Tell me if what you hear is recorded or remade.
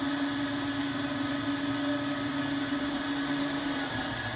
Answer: recorded